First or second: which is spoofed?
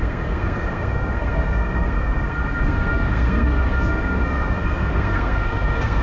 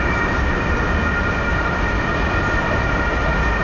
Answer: first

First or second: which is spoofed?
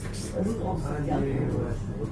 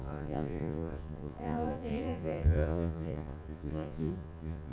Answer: second